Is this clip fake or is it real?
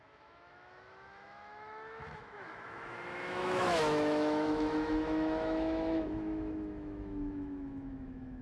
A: fake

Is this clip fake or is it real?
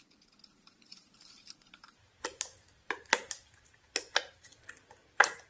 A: real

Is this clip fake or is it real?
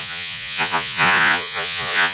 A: fake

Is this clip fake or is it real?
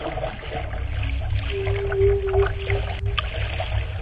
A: real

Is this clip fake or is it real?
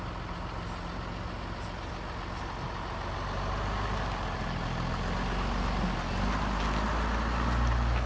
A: real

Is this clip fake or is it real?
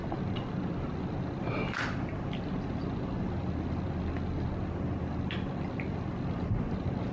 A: real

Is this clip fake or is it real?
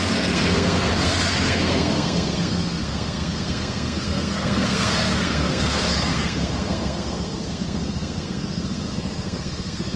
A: fake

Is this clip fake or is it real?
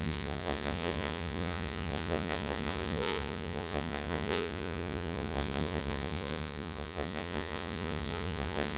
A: fake